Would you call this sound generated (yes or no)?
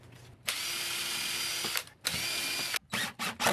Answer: no